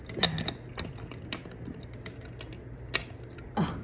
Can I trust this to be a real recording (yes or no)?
yes